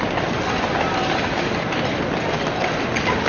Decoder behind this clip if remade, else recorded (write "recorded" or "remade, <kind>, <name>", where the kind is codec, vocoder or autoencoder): recorded